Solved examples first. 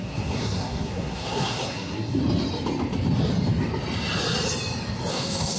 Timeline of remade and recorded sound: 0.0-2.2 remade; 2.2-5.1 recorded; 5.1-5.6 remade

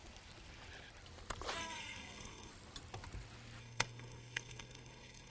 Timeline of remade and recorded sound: 0.0-1.6 recorded; 1.6-2.5 remade; 2.5-3.6 recorded; 3.6-5.3 remade

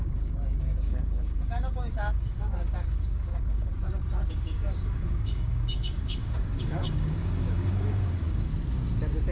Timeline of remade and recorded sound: 0.0-3.7 remade; 3.7-4.3 recorded; 4.3-8.5 remade; 8.5-9.3 recorded

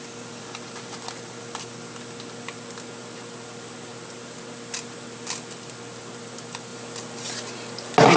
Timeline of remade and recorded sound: 0.0-8.2 recorded

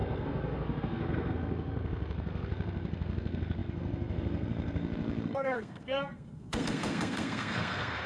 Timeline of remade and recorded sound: 0.0-8.1 remade

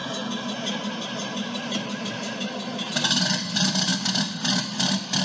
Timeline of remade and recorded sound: 0.0-5.2 recorded

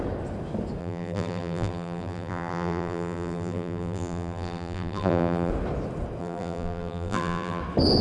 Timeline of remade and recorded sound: 0.0-0.8 recorded; 0.8-5.5 remade; 5.5-6.2 recorded; 6.2-7.6 remade; 7.6-8.0 recorded

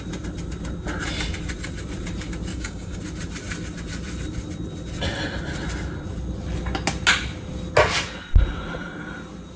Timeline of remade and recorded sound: 0.0-2.5 recorded; 2.5-3.0 remade; 3.0-9.6 recorded